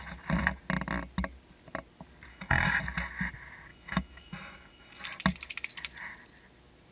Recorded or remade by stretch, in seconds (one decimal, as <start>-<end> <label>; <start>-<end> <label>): 0.0-2.3 recorded; 2.3-2.8 remade; 2.8-3.7 recorded; 3.7-5.0 remade; 5.0-6.9 recorded